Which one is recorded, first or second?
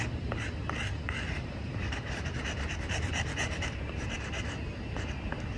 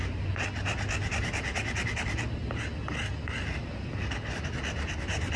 second